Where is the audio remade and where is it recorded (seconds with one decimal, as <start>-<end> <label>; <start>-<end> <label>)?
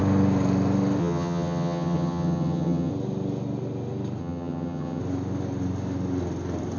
0.0-1.0 recorded; 1.0-2.9 remade; 2.9-4.2 recorded; 4.2-5.0 remade; 5.0-6.8 recorded